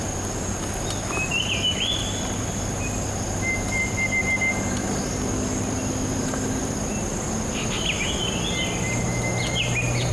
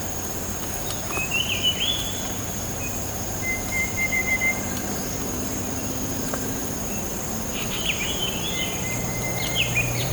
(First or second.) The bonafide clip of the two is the first